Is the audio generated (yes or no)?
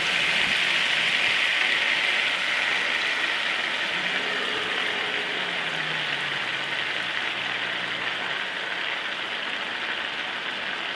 no